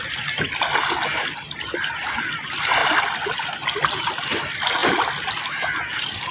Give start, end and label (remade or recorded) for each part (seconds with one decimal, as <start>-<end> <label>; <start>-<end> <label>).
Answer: 0.0-2.8 recorded; 2.8-3.3 remade; 3.3-4.8 recorded; 4.8-6.3 remade